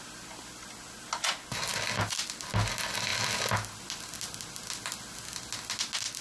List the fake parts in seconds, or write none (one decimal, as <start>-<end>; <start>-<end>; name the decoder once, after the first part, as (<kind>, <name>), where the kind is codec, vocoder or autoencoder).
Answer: none